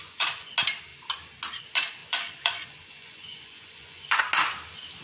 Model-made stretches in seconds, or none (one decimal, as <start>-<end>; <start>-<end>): 0.0-0.5; 2.0-4.2